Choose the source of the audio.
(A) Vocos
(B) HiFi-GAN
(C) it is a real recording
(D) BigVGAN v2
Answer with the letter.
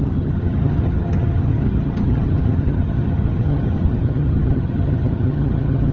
B